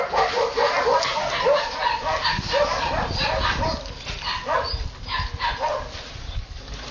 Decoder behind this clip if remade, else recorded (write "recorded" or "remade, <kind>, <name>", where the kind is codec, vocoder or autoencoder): recorded